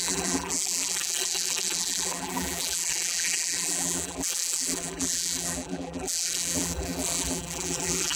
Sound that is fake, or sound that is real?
fake